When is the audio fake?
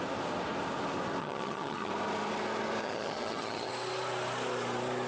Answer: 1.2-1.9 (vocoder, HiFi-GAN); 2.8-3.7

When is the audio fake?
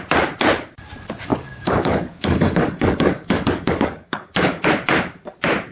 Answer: 1.3-4.7 (codec, DAC)